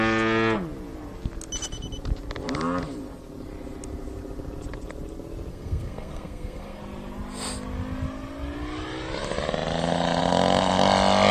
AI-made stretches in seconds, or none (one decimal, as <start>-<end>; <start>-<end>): 5.5-6.8